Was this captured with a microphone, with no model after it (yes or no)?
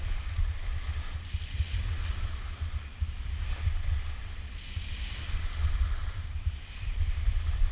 yes